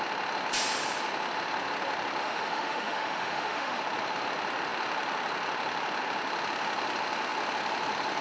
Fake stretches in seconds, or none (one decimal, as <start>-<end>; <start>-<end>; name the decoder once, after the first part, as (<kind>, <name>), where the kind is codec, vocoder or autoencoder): 2.2-3.8 (autoencoder, DAC-VAE)